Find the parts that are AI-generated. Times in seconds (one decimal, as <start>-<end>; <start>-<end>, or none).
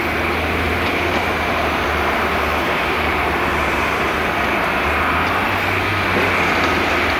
0.7-4.2